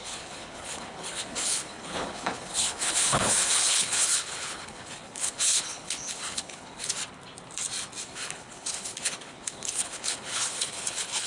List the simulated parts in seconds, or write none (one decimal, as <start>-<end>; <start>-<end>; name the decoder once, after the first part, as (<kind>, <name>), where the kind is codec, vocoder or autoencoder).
0.0-7.0 (codec, HILCodec); 8.0-11.3